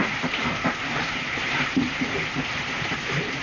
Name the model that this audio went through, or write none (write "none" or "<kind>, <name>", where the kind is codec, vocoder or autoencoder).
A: vocoder, BigVGAN v2